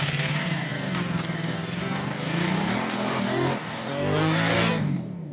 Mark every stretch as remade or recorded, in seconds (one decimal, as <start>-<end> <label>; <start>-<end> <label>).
0.0-5.3 remade